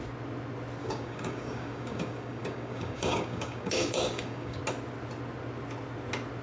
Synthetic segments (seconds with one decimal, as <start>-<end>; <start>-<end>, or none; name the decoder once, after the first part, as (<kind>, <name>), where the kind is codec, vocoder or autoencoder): 0.8-4.6 (codec, DAC)

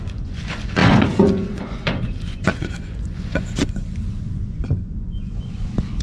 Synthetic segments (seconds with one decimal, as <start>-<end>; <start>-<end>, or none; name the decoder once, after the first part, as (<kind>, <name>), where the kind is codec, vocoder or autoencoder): 0.0-6.0 (vocoder, Vocos)

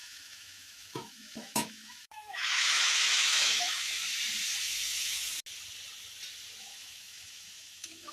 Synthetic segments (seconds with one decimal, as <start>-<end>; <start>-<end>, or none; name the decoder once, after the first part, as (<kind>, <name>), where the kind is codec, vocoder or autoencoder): 0.0-4.0 (autoencoder, DAC-VAE); 4.6-5.3; 6.6-8.1

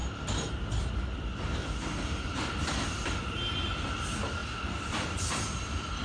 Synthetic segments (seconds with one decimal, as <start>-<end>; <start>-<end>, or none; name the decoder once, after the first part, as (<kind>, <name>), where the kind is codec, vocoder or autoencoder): 1.6-2.7 (vocoder, BigVGAN v2); 4.4-6.0

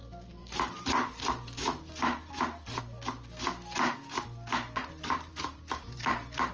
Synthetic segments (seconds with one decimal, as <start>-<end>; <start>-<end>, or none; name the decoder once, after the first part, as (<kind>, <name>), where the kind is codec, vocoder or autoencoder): 0.0-2.8 (vocoder, BigVGAN v2); 4.8-6.5